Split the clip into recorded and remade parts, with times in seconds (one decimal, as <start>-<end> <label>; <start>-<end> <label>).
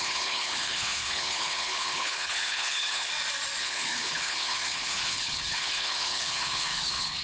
0.0-3.1 remade; 3.1-3.6 recorded; 3.6-7.2 remade